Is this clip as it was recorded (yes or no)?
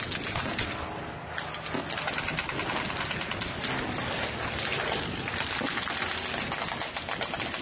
yes